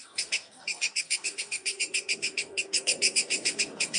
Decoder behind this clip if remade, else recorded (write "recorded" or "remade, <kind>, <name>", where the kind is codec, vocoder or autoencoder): remade, codec, DAC